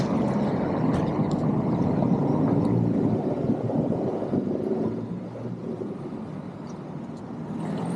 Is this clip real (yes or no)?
yes